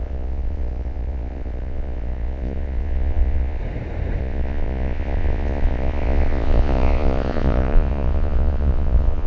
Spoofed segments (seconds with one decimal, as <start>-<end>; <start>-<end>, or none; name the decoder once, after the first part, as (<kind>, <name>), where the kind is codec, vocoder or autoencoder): 0.0-3.6 (vocoder, Vocos); 4.2-9.3